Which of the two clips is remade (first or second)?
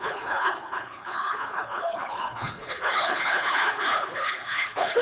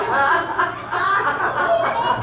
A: first